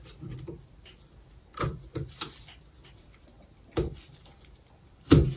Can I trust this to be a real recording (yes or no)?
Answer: no